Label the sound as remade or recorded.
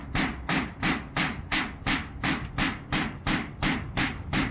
recorded